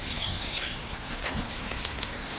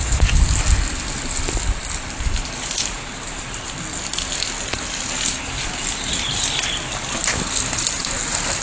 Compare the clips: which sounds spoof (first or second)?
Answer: first